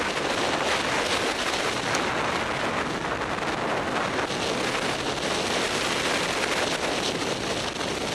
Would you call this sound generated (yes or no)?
no